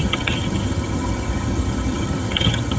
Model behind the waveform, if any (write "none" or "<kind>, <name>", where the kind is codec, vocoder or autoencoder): vocoder, HiFi-GAN